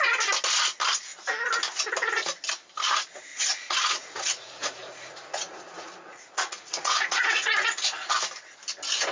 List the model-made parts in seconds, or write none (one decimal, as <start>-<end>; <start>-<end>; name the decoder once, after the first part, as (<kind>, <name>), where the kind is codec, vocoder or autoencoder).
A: 3.3-8.1 (vocoder, Vocos)